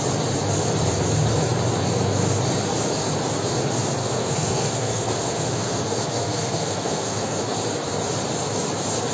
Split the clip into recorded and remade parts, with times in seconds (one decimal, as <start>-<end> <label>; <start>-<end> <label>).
0.0-4.0 recorded; 4.0-7.4 remade; 7.4-9.1 recorded